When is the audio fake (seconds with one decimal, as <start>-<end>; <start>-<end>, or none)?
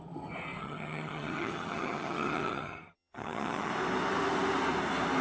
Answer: 0.6-3.7